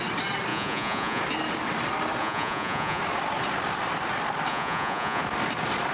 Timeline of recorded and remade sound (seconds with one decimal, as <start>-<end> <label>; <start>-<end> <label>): 0.0-0.5 recorded; 0.5-1.2 remade; 1.2-2.2 recorded; 2.2-3.0 remade; 3.0-4.5 recorded; 4.5-5.2 remade; 5.2-5.9 recorded